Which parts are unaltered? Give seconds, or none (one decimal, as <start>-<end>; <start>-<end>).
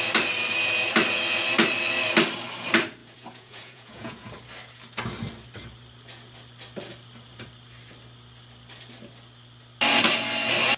0.0-3.0; 4.3-10.8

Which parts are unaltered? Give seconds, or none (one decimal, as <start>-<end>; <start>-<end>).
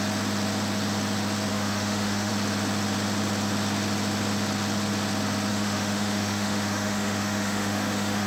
0.0-1.5; 2.3-5.5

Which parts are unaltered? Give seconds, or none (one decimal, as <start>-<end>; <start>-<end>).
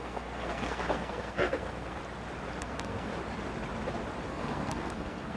2.0-2.6; 3.1-4.3